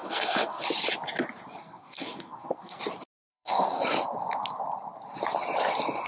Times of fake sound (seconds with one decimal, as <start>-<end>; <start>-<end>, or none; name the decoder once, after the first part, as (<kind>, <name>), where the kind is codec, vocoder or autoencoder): 0.0-0.6 (codec, SNAC); 1.6-2.8; 3.3-3.8